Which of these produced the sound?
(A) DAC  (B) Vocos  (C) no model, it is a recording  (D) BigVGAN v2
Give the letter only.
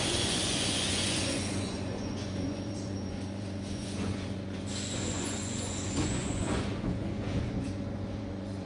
B